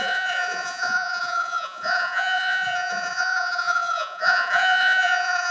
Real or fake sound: fake